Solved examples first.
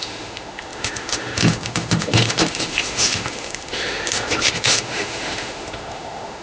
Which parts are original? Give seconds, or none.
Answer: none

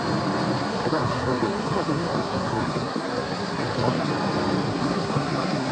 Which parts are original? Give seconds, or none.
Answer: 0.0-0.7; 4.1-4.7

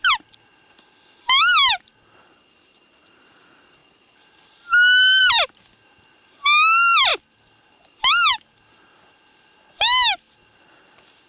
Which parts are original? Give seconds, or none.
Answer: 0.0-11.3

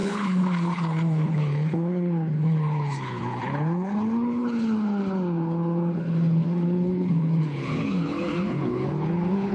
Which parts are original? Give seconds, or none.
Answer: none